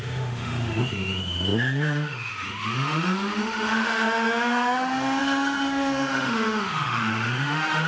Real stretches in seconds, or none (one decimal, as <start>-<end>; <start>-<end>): none